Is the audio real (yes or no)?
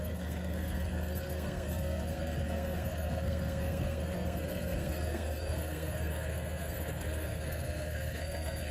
no